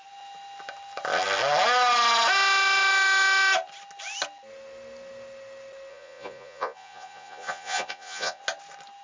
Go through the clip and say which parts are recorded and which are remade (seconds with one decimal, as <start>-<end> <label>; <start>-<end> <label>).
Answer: 0.0-5.9 recorded; 5.9-8.4 remade; 8.4-9.0 recorded